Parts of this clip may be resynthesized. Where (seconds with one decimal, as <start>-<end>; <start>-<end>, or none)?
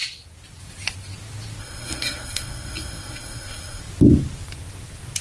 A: 1.6-3.8